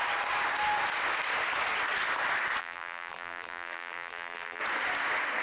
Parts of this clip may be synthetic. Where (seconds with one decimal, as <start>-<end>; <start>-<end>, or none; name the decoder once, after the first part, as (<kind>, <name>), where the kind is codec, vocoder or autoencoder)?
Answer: 2.6-4.6 (vocoder, BigVGAN v2)